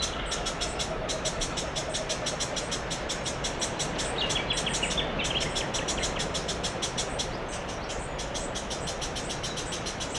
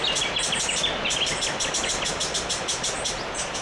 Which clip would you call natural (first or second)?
first